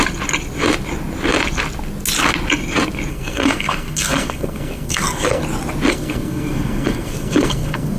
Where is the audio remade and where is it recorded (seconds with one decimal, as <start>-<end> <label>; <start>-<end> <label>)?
0.0-3.1 recorded; 3.1-5.4 remade; 5.4-5.9 recorded; 5.9-8.0 remade